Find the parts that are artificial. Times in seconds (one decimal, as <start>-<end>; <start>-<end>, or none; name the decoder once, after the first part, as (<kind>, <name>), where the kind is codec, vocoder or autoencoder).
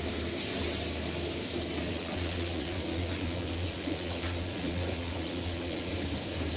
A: 1.9-5.9 (vocoder, Vocos)